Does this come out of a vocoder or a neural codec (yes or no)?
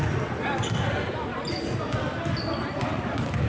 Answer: no